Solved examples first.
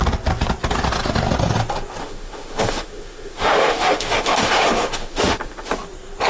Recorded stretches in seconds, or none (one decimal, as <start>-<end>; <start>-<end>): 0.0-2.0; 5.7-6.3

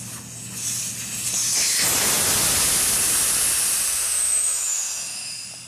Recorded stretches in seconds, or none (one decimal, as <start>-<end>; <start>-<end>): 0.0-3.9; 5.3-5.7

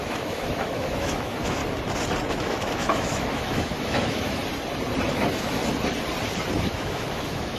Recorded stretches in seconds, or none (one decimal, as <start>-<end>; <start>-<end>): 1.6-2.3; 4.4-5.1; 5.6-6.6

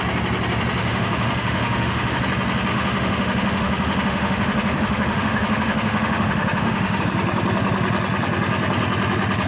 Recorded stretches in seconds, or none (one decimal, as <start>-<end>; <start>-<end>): 0.0-0.8; 2.2-2.7; 7.0-9.5

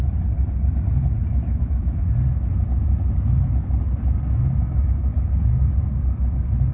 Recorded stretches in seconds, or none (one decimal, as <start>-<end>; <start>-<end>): 0.0-1.3; 2.0-6.7

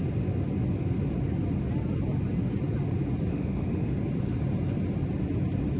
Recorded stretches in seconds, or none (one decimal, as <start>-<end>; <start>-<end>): 0.0-3.3; 4.0-5.8